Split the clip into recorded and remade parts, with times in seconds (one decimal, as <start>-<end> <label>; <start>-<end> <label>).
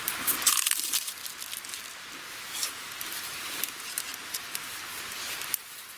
0.0-1.2 remade; 1.2-2.5 recorded; 2.5-4.1 remade; 4.1-6.0 recorded